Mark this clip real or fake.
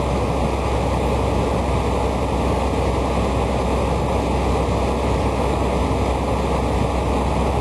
real